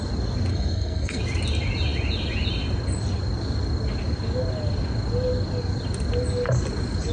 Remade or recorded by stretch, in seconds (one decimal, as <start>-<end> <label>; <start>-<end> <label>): 0.0-0.5 recorded; 0.5-1.2 remade; 1.2-7.1 recorded